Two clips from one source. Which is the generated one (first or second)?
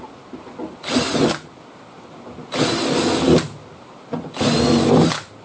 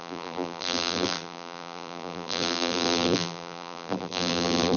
second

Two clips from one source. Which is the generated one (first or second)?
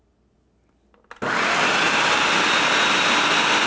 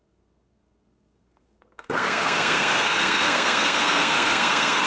second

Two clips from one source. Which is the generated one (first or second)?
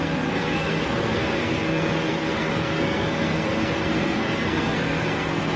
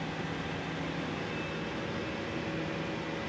first